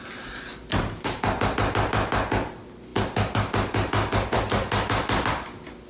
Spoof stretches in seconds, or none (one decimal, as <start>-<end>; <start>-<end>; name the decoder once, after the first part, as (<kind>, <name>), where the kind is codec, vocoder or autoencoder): none